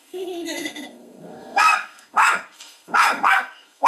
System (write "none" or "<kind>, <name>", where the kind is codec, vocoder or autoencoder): codec, SNAC